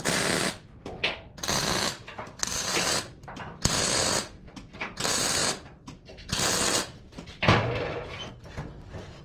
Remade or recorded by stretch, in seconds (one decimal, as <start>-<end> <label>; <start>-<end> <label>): 0.0-5.4 recorded; 5.4-8.3 remade; 8.3-9.2 recorded